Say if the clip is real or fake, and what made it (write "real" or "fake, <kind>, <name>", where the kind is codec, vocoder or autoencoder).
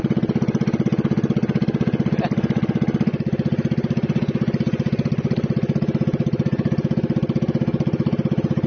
real